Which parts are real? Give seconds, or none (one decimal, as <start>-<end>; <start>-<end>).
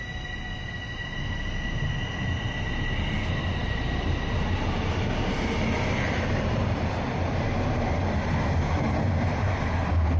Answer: 0.0-10.2